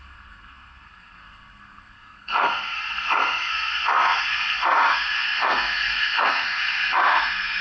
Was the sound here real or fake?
fake